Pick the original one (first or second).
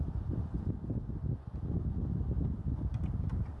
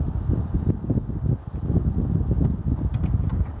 second